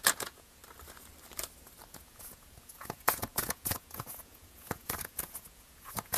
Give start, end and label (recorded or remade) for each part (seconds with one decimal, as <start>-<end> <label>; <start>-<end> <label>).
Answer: 0.0-0.6 remade; 0.6-1.9 recorded; 1.9-6.2 remade